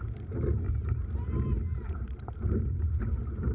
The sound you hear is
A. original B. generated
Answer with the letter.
B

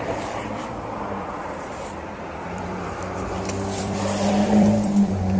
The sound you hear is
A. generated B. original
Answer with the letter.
A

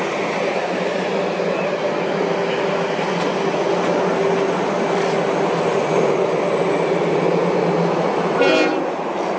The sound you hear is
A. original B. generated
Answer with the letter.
A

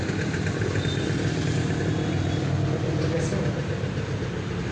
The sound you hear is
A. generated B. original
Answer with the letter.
B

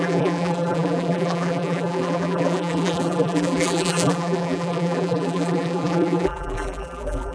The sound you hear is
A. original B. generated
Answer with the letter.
B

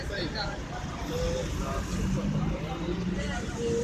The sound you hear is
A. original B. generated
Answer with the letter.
A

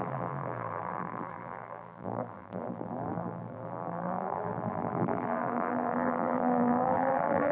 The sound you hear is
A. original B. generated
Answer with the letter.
B